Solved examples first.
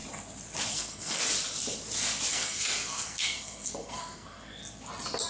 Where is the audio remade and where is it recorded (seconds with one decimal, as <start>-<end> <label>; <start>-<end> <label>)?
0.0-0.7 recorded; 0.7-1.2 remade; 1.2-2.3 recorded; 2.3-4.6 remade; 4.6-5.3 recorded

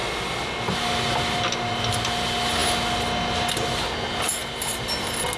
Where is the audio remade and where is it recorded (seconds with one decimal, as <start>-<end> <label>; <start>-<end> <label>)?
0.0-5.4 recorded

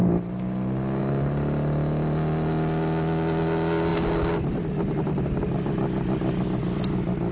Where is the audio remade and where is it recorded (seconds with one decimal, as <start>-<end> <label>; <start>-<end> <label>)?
0.0-7.3 recorded

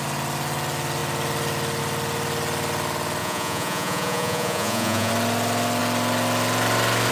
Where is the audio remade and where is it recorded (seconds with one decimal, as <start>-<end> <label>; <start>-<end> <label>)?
0.0-3.2 recorded; 3.2-5.1 remade; 5.1-7.1 recorded